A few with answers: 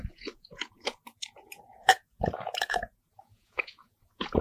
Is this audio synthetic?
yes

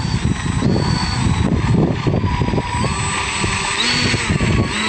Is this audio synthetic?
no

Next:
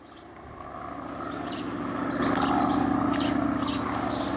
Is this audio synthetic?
no